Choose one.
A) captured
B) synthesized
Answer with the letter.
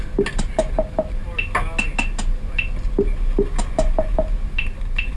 A